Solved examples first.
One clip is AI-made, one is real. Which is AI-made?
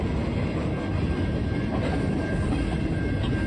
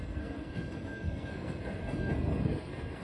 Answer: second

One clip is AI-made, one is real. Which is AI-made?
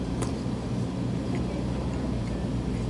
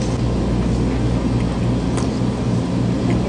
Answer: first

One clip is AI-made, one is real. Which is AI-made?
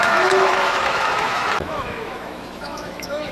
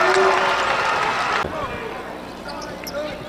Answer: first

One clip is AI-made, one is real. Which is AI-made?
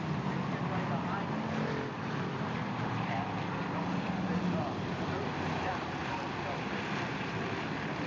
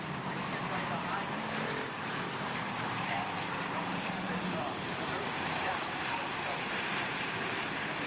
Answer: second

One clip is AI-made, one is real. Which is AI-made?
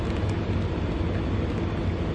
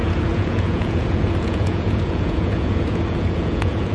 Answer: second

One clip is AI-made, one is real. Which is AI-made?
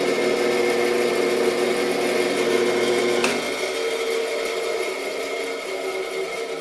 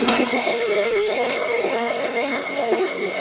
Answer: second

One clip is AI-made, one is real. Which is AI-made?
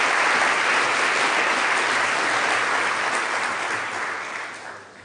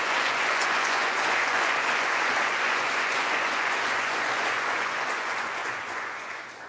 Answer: second